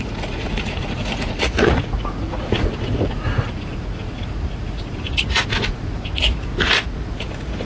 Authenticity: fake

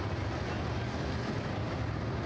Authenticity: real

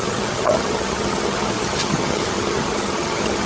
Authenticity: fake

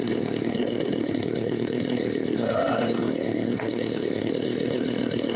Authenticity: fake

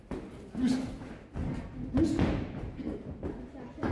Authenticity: real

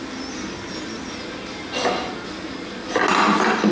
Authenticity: real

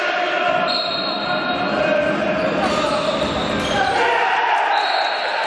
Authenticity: real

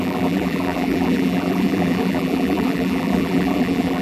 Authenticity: fake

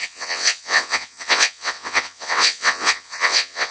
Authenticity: fake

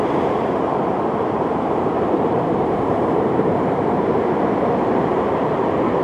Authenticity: fake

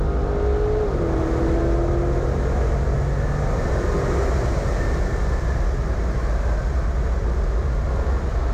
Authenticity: real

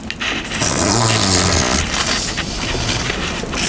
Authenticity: real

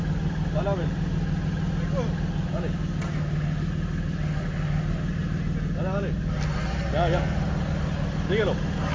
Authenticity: real